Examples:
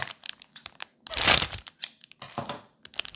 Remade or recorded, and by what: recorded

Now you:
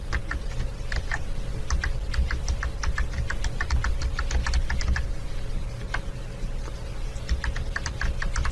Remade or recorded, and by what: recorded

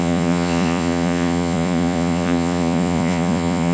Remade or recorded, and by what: remade, vocoder, Vocos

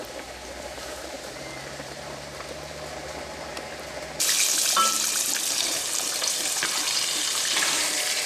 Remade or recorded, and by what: remade, vocoder, BigVGAN v2